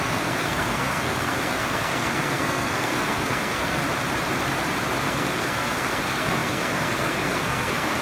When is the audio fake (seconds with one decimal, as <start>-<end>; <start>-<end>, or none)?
0.0-3.8; 5.0-8.0